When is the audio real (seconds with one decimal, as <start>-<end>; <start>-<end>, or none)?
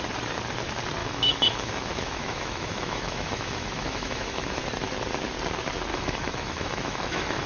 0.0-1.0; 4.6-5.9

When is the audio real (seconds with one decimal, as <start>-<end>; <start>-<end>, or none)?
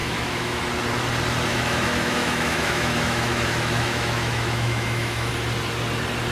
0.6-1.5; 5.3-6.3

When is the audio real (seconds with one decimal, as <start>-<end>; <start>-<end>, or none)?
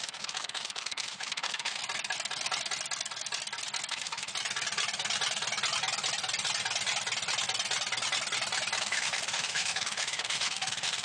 1.8-3.9; 4.3-8.8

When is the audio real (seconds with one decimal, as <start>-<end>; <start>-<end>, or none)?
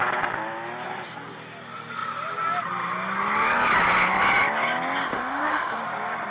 0.0-5.1; 5.8-6.3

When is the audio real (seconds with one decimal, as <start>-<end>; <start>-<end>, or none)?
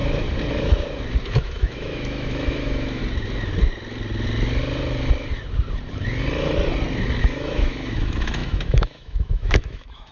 0.0-1.3; 3.0-7.2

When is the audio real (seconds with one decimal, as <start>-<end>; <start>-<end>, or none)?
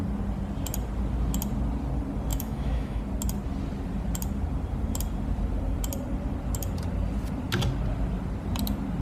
0.0-2.3; 3.0-9.0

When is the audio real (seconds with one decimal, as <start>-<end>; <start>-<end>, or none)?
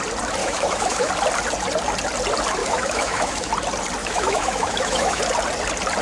0.0-0.4; 1.1-2.6; 3.5-4.0; 5.2-6.0